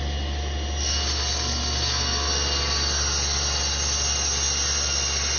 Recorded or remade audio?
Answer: recorded